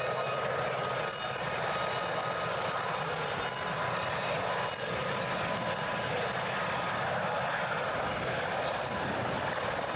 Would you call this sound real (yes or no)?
yes